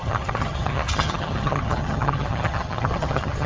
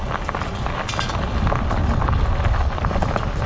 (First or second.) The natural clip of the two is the second